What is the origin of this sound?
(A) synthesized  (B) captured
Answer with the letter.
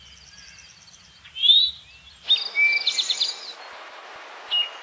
B